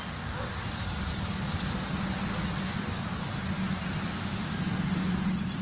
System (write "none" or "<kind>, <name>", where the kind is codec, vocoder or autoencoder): none